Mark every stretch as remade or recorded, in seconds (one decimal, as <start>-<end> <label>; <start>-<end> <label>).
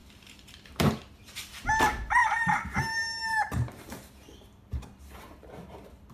0.0-1.0 remade; 1.0-2.2 recorded; 2.2-6.1 remade